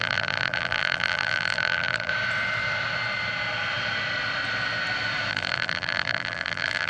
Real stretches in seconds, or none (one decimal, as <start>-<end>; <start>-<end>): 2.1-5.3